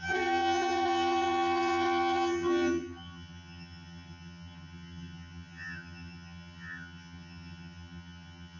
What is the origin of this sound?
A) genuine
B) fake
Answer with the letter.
B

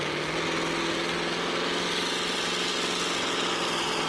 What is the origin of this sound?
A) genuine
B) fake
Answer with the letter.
A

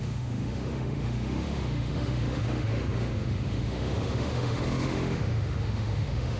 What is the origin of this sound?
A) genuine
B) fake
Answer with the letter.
B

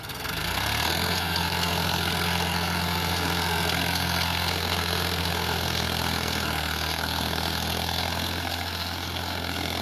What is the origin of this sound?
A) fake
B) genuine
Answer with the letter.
A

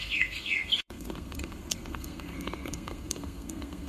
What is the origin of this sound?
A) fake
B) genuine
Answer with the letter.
A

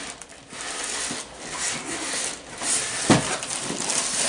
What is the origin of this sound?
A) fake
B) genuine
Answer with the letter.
B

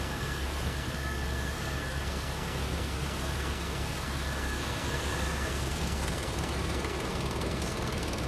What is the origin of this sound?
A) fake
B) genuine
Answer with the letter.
A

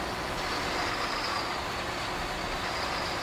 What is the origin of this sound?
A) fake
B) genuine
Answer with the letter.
B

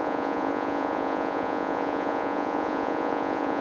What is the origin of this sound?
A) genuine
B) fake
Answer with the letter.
B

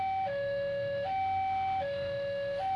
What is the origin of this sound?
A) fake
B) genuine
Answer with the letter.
A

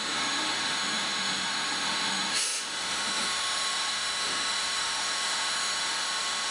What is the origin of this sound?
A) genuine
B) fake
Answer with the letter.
B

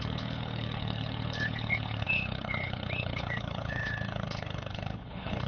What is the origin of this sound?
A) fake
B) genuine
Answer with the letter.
A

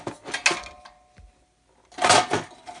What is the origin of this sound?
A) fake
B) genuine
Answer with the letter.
B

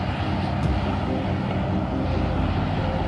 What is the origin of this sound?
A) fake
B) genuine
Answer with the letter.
B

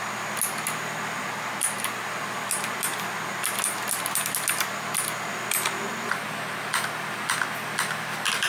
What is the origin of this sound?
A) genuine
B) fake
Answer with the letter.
A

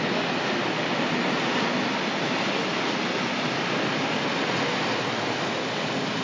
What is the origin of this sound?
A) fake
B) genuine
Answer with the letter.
B